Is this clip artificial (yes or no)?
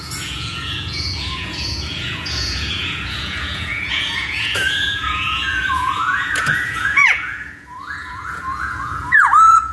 yes